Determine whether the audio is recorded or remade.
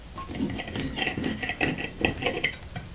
recorded